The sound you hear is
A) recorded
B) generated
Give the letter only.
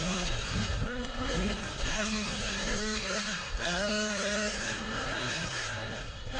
B